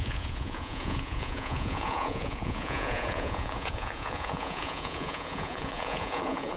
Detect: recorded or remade remade